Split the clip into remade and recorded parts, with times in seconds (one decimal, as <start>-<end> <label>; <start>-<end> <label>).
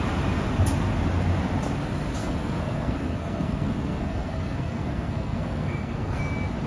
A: 0.0-2.2 recorded; 2.2-6.2 remade; 6.2-6.7 recorded